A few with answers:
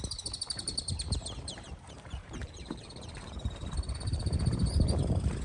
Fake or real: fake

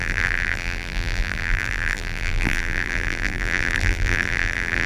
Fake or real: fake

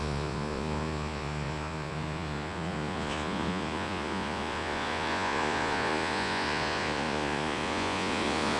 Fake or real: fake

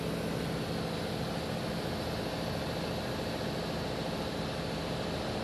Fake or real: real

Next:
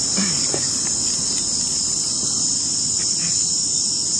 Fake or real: real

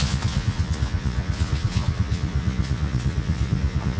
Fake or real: fake